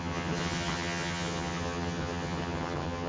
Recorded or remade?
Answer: remade